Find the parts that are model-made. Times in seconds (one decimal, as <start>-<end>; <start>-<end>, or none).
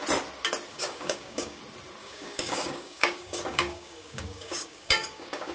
0.7-1.6; 2.0-5.5